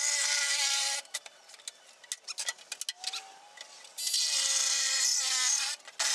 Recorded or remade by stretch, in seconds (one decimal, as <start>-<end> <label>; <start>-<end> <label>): 0.0-6.1 recorded